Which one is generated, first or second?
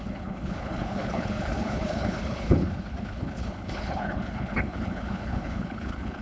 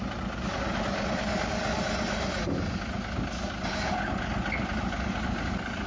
first